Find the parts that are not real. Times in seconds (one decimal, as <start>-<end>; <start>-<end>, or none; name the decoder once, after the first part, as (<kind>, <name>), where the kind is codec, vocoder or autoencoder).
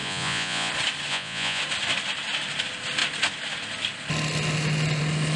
0.0-0.7 (vocoder, Vocos); 1.1-1.6